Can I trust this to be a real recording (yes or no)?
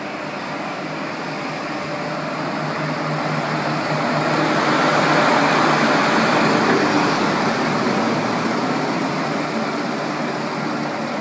yes